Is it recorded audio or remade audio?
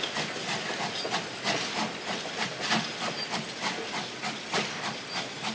recorded